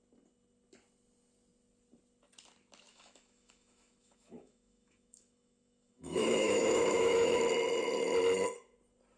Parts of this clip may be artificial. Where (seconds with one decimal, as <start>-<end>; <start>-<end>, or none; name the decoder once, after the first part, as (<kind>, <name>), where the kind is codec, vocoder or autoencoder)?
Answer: 2.9-7.4 (autoencoder, DAC-VAE)